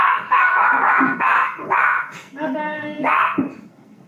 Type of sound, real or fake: fake